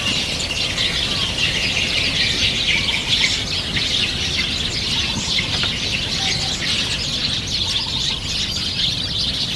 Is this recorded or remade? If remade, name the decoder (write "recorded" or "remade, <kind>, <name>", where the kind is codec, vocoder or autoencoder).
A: recorded